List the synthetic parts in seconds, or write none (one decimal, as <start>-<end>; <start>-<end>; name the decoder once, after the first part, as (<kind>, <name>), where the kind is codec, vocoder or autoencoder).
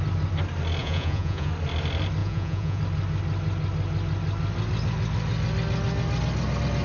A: 0.8-1.5 (vocoder, Vocos); 2.2-2.8